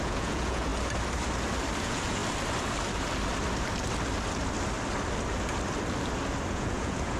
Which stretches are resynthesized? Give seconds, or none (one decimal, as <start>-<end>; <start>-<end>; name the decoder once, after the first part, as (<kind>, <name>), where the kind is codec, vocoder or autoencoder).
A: 0.0-0.7 (vocoder, Vocos); 1.8-2.2; 6.5-7.2